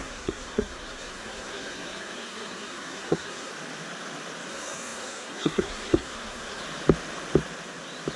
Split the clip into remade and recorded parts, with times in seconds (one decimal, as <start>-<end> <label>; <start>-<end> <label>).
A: 0.0-3.5 remade; 3.5-4.5 recorded; 4.5-6.6 remade; 6.6-8.2 recorded